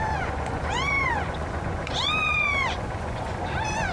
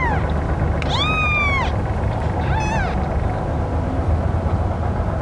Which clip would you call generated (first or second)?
first